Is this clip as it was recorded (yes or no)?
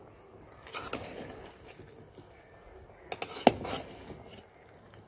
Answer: yes